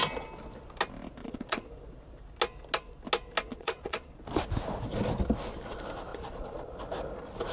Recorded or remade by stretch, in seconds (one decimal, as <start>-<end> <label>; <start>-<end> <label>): 0.0-1.2 recorded; 1.2-1.7 remade; 1.7-3.5 recorded; 3.5-4.1 remade; 4.1-6.1 recorded; 6.1-6.7 remade; 6.7-7.5 recorded